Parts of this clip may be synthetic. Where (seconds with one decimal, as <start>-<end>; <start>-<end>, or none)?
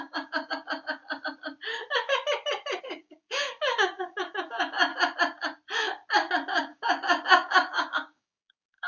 0.0-1.0; 2.8-4.9; 6.5-8.9